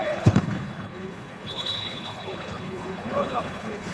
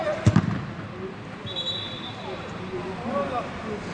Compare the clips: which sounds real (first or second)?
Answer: second